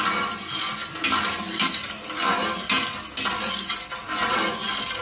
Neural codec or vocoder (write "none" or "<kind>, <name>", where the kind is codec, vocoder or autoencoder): none